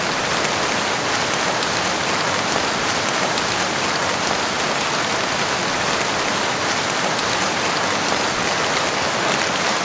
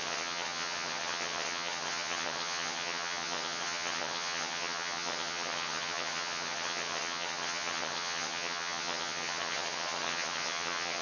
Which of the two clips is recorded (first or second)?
first